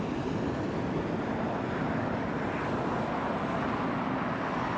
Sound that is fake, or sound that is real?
real